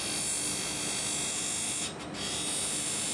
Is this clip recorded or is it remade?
recorded